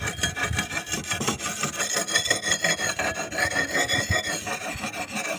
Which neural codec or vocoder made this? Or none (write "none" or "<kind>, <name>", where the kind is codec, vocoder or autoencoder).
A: none